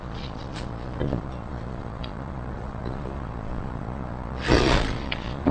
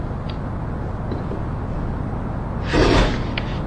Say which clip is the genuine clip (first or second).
second